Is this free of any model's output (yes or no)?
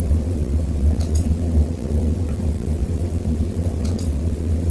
no